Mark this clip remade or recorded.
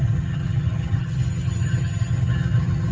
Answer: remade